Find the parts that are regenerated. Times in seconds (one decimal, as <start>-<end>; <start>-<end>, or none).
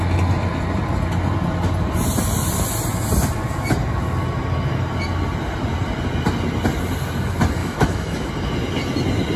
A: 7.6-8.3